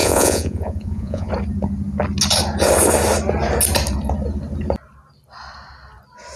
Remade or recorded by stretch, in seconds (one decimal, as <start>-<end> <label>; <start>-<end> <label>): 0.0-1.3 remade; 1.3-6.4 recorded